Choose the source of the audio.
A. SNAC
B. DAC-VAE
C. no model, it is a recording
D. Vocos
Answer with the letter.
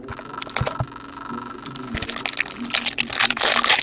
C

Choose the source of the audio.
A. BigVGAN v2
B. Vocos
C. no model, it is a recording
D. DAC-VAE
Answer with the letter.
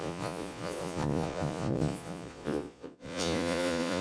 B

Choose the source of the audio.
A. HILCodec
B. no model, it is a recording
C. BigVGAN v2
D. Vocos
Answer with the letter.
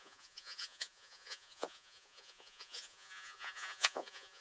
D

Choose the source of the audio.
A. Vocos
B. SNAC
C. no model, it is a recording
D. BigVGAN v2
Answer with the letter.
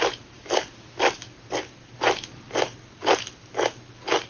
C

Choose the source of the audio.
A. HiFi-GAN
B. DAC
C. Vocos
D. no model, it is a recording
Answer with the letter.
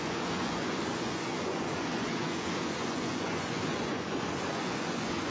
C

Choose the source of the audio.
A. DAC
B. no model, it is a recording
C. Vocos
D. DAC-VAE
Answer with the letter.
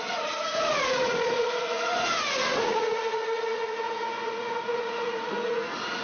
C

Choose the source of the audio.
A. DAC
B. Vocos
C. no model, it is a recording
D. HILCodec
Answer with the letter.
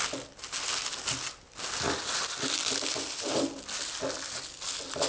C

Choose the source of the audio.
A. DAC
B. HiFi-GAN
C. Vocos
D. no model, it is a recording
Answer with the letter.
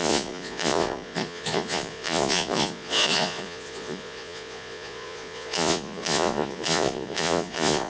C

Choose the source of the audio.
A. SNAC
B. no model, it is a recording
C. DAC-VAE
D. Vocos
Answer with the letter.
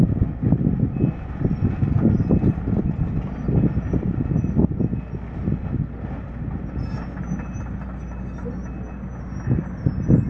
B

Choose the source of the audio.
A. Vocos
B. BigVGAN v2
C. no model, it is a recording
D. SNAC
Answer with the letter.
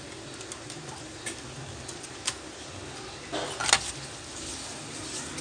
C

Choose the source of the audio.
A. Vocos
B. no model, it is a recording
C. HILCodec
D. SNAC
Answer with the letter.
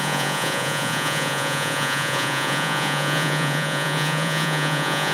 A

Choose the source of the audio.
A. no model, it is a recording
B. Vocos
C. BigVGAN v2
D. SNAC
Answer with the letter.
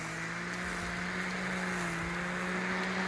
A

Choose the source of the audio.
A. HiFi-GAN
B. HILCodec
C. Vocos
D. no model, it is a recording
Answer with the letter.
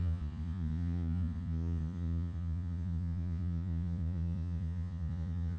C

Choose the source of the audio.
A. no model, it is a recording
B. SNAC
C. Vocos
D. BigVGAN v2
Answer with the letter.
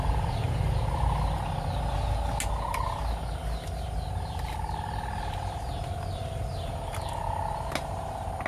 A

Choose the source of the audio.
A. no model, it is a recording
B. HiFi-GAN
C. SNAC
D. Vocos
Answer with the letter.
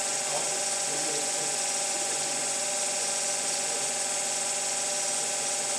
D